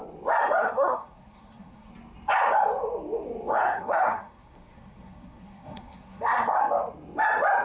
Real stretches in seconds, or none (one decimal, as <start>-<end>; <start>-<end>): 0.0-0.6; 1.9-3.5; 6.6-7.6